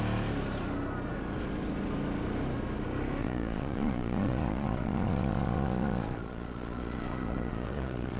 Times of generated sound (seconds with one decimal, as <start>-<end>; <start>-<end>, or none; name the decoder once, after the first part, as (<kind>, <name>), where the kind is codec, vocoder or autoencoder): 3.2-8.2 (vocoder, Vocos)